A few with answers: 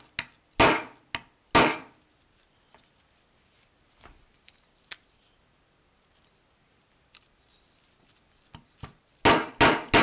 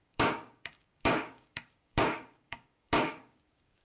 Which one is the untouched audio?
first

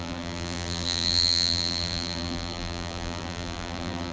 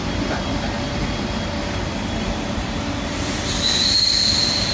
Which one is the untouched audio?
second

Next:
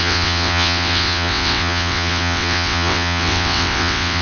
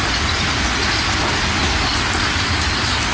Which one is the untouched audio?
second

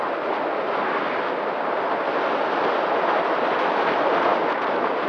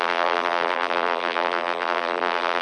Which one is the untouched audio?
first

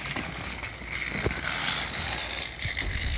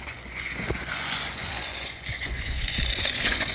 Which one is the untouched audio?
first